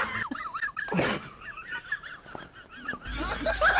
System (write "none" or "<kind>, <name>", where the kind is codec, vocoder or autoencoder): none